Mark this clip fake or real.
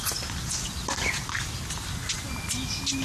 real